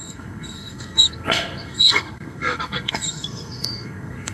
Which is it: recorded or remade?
remade